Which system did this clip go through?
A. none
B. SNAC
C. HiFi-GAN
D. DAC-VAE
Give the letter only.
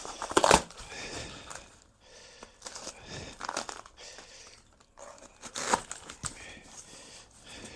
A